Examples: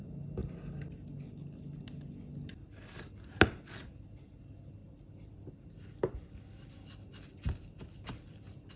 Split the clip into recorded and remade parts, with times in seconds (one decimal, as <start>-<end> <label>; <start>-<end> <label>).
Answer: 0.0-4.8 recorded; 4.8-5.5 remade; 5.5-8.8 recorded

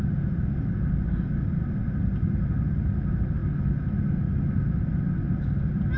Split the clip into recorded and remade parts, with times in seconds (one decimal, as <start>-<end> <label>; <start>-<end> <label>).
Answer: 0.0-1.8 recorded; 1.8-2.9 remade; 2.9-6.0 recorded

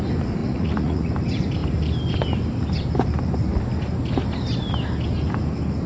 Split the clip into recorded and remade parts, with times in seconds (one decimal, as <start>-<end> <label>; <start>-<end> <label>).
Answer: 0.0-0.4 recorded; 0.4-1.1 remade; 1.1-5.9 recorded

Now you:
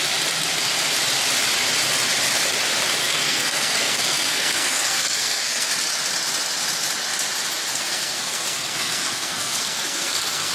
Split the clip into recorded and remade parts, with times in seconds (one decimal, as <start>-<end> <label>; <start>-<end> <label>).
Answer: 0.0-3.0 recorded; 3.0-5.7 remade; 5.7-7.7 recorded; 7.7-10.5 remade

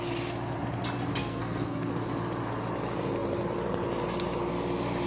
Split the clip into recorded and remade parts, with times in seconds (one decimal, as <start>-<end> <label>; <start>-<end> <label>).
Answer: 0.0-1.2 recorded; 1.2-1.9 remade; 1.9-5.1 recorded

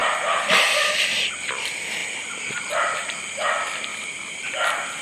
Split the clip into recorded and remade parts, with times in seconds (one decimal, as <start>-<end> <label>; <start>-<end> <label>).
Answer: 0.0-1.4 recorded; 1.4-3.9 remade; 3.9-5.0 recorded

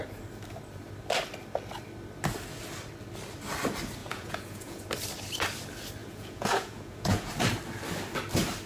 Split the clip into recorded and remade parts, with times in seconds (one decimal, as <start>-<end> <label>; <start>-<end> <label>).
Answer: 0.0-4.0 recorded; 4.0-4.8 remade; 4.8-6.0 recorded; 6.0-7.3 remade; 7.3-8.7 recorded